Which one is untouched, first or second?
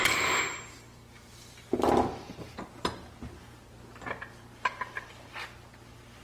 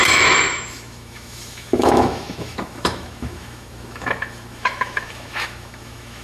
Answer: first